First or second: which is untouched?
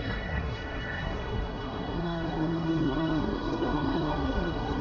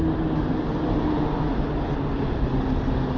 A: second